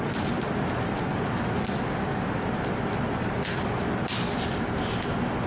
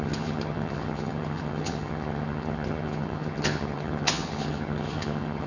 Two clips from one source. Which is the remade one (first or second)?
second